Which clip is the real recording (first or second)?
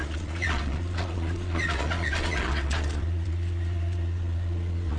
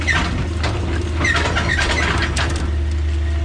second